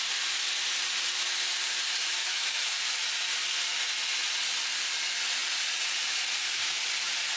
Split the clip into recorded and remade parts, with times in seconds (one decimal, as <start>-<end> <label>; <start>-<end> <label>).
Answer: 0.0-2.2 recorded; 2.2-2.8 remade; 2.8-7.4 recorded